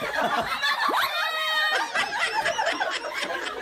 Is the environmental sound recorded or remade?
remade